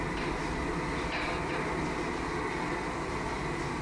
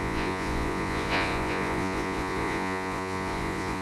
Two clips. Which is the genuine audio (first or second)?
first